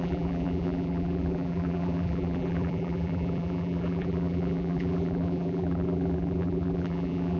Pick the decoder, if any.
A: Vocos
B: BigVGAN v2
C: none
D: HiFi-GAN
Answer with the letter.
B